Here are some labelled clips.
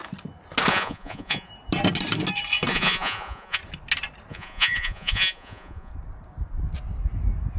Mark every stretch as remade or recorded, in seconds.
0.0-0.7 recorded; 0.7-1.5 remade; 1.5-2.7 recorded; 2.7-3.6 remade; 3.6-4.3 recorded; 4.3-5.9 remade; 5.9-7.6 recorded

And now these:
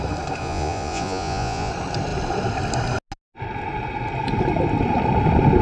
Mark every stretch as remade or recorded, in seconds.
0.0-0.4 recorded; 0.4-1.7 remade; 1.7-5.6 recorded

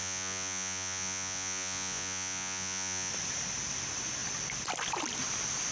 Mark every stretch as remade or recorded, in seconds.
0.0-3.1 remade; 3.1-5.7 recorded

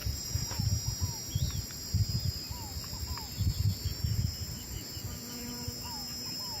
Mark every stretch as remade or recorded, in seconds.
0.0-0.6 remade; 0.6-6.6 recorded

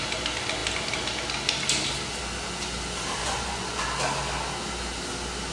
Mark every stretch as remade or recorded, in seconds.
0.0-3.2 recorded; 3.2-3.8 remade; 3.8-5.5 recorded

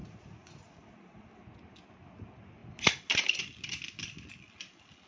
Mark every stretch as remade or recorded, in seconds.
0.0-1.3 remade; 1.3-5.1 recorded

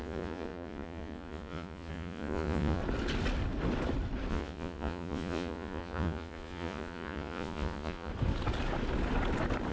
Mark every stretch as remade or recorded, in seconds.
0.0-2.8 remade; 2.8-4.3 recorded; 4.3-8.1 remade; 8.1-9.7 recorded

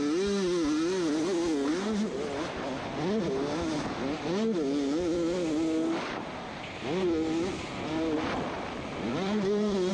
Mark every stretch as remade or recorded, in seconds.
0.0-9.1 recorded; 9.1-9.9 remade